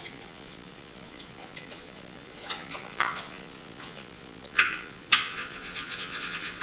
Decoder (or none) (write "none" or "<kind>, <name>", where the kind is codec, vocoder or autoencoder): vocoder, Vocos